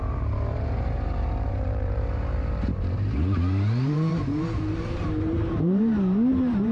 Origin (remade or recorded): remade